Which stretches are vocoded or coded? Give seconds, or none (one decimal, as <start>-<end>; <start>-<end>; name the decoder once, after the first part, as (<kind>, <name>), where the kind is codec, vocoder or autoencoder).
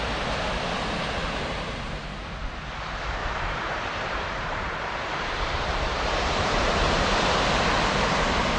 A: 3.2-6.5 (vocoder, BigVGAN v2)